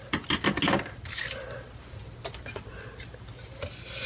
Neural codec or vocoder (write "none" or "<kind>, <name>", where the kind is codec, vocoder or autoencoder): none